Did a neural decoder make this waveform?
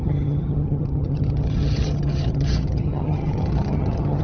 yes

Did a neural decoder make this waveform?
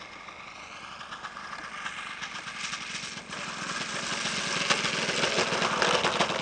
no